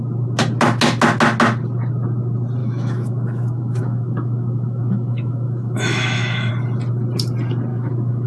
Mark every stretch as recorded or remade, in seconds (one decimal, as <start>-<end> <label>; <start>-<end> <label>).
0.0-2.6 recorded; 2.6-6.5 remade; 6.5-7.7 recorded; 7.7-8.3 remade